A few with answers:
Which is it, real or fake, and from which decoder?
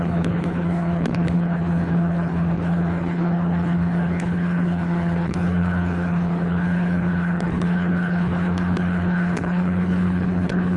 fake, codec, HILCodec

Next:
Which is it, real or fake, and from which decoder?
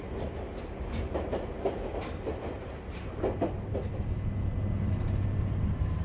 real